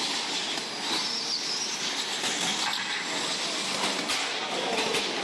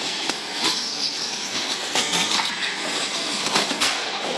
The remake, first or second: second